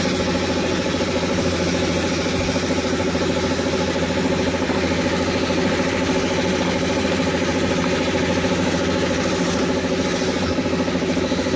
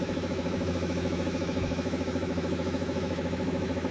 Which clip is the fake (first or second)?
second